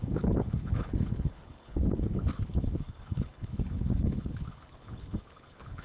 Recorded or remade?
remade